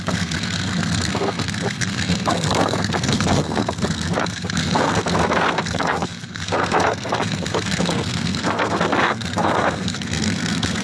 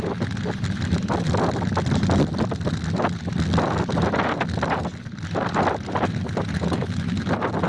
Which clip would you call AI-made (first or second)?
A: first